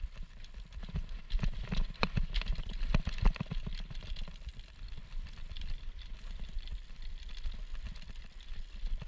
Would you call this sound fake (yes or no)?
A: no